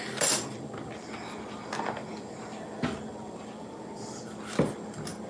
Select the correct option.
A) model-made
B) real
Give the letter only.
B